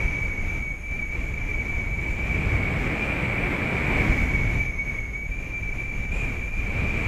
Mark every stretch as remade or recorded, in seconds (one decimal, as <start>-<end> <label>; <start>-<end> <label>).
0.0-7.1 recorded